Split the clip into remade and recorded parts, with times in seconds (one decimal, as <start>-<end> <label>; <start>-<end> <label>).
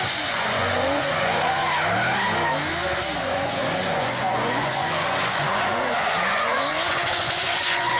0.0-1.6 remade; 1.6-3.2 recorded; 3.2-8.0 remade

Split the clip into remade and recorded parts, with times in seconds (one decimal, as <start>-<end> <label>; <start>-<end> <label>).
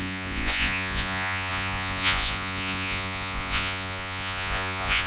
0.0-5.1 remade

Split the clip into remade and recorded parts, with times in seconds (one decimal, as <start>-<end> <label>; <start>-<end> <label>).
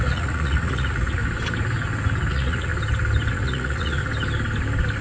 0.0-1.2 remade; 1.2-2.3 recorded; 2.3-2.7 remade; 2.7-3.3 recorded; 3.3-4.0 remade; 4.0-5.0 recorded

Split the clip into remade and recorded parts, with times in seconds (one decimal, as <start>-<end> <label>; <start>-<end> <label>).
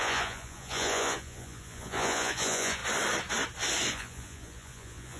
0.0-2.8 remade; 2.8-3.9 recorded; 3.9-5.2 remade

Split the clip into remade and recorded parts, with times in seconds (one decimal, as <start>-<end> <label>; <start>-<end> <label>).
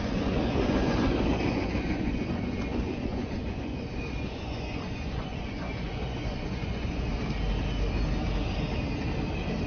0.0-7.1 remade; 7.1-9.7 recorded